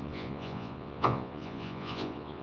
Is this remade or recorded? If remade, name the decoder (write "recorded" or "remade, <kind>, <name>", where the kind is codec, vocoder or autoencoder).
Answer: remade, vocoder, Vocos